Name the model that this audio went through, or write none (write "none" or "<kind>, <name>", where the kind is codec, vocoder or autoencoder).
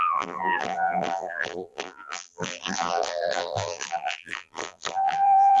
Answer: vocoder, BigVGAN v2